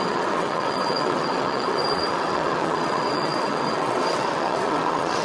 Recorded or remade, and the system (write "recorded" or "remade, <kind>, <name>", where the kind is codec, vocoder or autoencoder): remade, vocoder, WaveNeXt